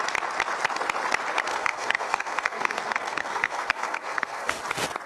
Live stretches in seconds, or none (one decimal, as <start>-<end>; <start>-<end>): 0.0-1.5; 4.6-5.1